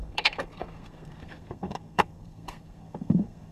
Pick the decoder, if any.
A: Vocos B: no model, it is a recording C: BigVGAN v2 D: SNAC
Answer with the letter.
D